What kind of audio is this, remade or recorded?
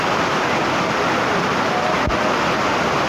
recorded